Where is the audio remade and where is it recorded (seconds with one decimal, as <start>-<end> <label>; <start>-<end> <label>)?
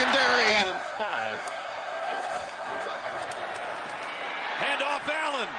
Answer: 0.0-0.5 recorded; 0.5-3.2 remade; 3.2-5.6 recorded